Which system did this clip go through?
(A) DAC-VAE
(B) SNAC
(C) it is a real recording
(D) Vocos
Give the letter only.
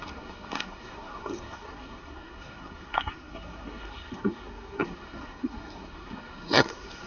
B